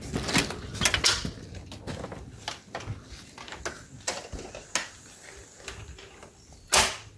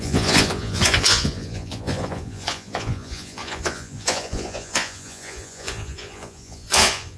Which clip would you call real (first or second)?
first